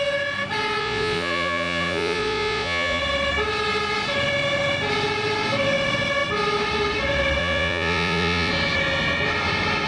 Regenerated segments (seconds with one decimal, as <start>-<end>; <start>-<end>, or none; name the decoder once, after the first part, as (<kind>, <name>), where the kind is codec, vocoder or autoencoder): 0.8-3.0 (vocoder, Vocos); 7.4-8.5